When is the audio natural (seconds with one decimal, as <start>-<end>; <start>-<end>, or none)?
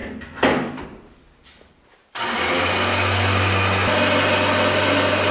0.0-5.3